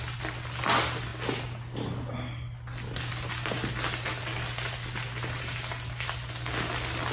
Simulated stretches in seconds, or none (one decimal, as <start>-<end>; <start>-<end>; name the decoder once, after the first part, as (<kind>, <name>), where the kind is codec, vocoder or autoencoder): none